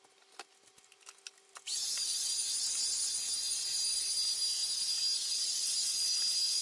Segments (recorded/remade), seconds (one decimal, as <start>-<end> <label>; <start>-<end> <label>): 0.0-6.6 recorded